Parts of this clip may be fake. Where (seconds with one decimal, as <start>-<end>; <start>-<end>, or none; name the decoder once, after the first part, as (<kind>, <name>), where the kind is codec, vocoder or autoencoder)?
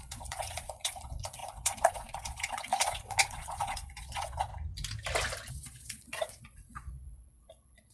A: 0.0-4.5 (vocoder, Vocos); 5.5-7.9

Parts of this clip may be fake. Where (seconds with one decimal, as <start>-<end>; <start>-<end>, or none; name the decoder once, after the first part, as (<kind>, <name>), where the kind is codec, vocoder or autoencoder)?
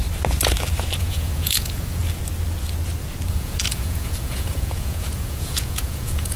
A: 1.0-2.0 (vocoder, Vocos); 3.3-6.4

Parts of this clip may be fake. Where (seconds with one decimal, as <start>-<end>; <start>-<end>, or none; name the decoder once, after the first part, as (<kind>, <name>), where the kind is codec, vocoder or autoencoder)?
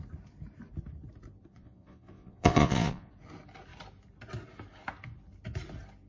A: 1.5-3.1 (vocoder, Vocos)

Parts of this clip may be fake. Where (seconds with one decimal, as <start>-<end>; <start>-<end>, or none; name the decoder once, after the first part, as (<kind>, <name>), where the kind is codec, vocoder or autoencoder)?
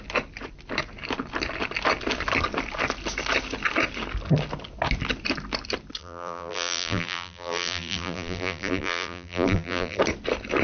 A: 6.0-10.0 (vocoder, BigVGAN v2)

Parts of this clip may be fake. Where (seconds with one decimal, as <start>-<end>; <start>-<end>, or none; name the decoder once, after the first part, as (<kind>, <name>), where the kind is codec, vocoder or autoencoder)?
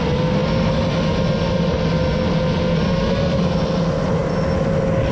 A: none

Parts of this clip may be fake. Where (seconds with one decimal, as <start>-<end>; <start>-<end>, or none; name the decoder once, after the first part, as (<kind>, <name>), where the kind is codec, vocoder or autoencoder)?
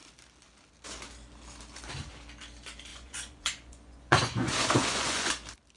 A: 2.9-5.3 (vocoder, Vocos)